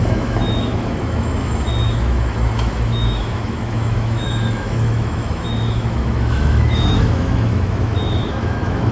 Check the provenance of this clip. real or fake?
fake